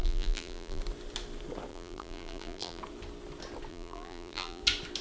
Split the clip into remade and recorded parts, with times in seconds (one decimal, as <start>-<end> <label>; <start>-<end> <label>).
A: 0.0-0.8 remade; 0.8-1.7 recorded; 1.7-2.8 remade; 2.8-3.7 recorded; 3.7-4.6 remade; 4.6-5.0 recorded

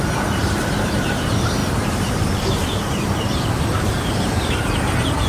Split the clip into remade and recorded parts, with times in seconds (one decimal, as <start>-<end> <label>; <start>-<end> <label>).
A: 0.0-5.3 remade

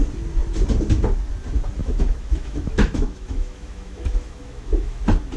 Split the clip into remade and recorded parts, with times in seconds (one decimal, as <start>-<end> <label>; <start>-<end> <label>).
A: 0.0-1.8 recorded; 1.8-5.0 remade; 5.0-5.4 recorded

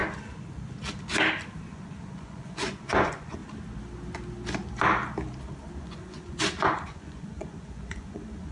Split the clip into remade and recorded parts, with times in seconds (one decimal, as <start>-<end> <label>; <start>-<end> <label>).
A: 0.0-1.7 recorded; 1.7-3.4 remade; 3.4-5.8 recorded; 5.8-8.5 remade

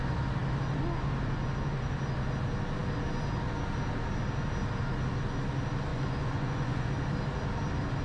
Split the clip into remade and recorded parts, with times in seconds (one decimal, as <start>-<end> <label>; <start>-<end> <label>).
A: 0.0-5.9 recorded; 5.9-6.9 remade; 6.9-8.0 recorded